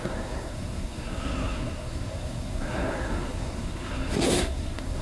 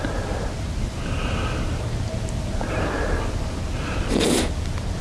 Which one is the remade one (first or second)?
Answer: first